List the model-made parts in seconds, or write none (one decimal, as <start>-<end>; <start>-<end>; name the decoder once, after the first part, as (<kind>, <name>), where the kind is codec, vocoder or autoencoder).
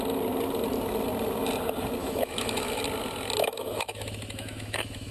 2.0-2.8 (autoencoder, DAC-VAE); 3.4-5.1